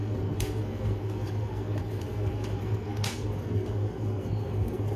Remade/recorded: remade